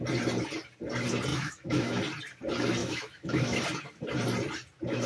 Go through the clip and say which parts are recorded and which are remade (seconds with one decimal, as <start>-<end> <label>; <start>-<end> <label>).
0.0-1.3 recorded; 1.3-2.0 remade; 2.0-2.8 recorded; 2.8-3.6 remade; 3.6-5.1 recorded